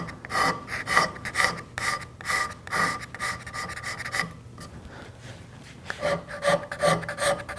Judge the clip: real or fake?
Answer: real